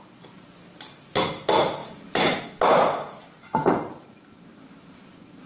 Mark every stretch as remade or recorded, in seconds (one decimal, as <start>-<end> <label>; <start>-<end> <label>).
0.0-1.8 recorded; 1.8-2.4 remade; 2.4-3.6 recorded; 3.6-5.5 remade

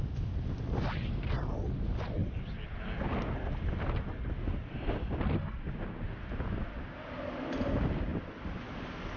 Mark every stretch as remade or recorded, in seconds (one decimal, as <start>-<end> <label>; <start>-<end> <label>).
0.0-2.2 recorded; 2.2-4.8 remade; 4.8-8.1 recorded; 8.1-9.2 remade